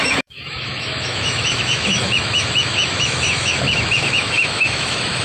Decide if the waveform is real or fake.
fake